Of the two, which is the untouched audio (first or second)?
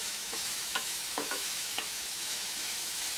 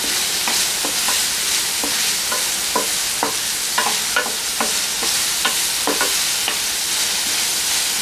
second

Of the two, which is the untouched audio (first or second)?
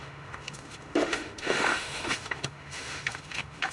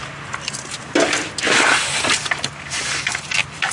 second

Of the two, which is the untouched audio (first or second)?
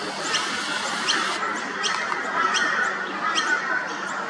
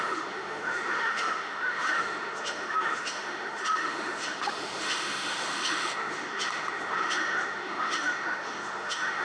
first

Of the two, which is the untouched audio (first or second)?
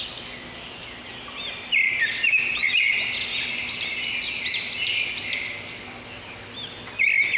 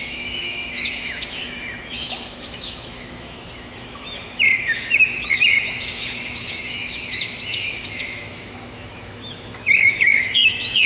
first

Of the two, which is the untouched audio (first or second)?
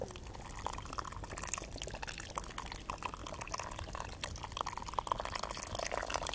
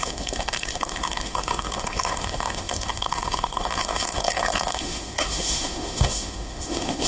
first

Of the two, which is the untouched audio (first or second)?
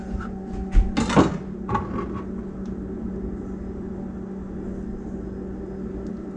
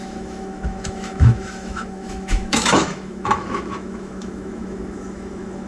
first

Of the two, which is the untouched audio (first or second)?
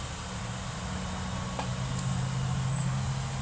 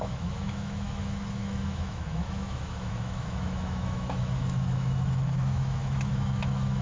first